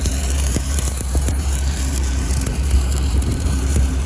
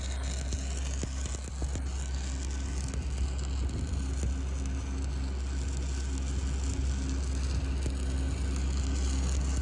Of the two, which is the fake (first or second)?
first